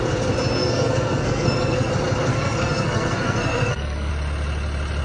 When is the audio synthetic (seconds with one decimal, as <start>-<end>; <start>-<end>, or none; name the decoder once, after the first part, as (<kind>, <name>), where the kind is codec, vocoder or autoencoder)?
0.6-1.9 (codec, SNAC); 2.3-4.1